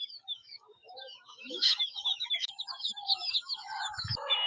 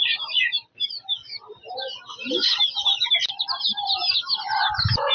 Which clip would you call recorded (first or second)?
second